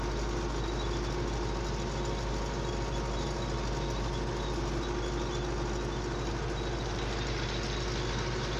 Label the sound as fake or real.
real